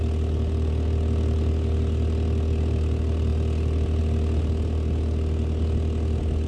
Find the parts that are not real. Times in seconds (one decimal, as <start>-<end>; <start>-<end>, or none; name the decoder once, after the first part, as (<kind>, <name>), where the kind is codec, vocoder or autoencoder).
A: none